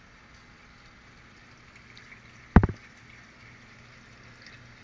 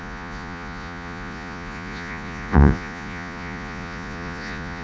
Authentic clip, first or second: first